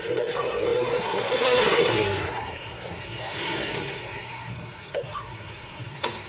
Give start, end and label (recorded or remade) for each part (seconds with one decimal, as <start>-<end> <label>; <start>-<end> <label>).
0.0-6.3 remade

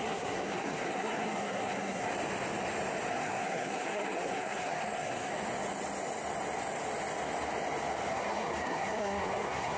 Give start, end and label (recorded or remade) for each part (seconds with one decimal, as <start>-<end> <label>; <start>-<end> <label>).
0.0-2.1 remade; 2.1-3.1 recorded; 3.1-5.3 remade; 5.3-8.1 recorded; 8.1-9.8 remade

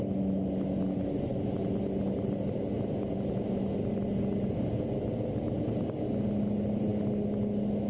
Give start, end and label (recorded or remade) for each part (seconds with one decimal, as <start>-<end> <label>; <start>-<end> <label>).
0.0-7.9 recorded

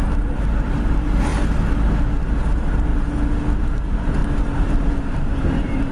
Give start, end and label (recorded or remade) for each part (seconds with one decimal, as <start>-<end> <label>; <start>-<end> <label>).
0.0-1.3 remade; 1.3-2.4 recorded; 2.4-2.9 remade; 2.9-3.6 recorded; 3.6-4.2 remade; 4.2-5.0 recorded; 5.0-5.9 remade